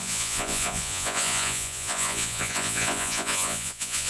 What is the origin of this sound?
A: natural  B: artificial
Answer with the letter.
B